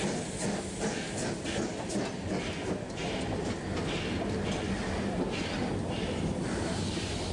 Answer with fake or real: real